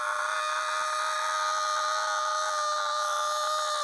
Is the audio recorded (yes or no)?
yes